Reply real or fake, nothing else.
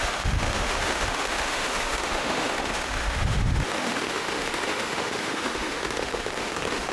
fake